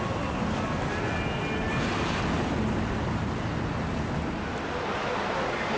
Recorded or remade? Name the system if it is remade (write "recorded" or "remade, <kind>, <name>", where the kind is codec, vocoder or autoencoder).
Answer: recorded